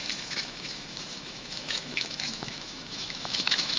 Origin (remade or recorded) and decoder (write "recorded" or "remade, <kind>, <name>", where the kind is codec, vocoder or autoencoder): remade, autoencoder, DAC-VAE